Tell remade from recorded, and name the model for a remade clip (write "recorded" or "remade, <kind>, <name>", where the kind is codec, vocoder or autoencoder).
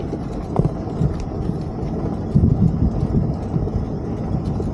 recorded